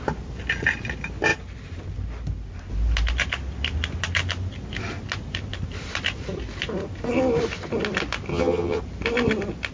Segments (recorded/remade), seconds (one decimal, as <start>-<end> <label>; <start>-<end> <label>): 0.0-8.3 recorded; 8.3-8.8 remade; 8.8-9.7 recorded